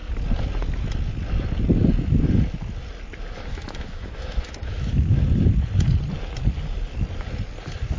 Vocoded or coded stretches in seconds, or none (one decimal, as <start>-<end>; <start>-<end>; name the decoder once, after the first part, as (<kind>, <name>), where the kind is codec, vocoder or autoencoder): 3.5-5.2 (autoencoder, DAC-VAE)